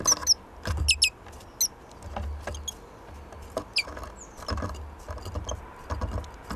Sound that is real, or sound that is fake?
real